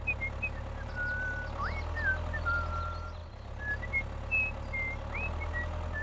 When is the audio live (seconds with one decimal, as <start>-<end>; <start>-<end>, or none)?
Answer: 0.0-6.0